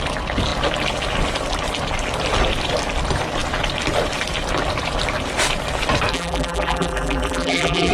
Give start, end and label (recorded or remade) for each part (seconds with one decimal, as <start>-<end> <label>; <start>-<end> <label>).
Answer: 0.0-6.1 recorded; 6.1-7.9 remade